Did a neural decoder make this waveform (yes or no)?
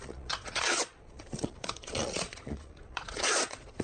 yes